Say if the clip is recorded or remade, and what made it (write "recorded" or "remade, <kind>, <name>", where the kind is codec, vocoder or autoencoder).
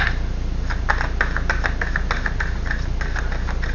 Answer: recorded